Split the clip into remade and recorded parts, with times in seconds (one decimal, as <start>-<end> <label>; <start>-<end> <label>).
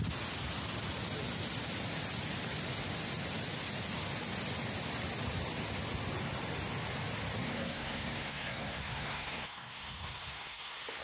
0.0-7.4 recorded; 7.4-11.0 remade